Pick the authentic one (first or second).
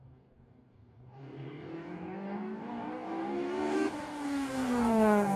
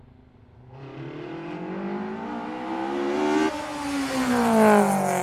second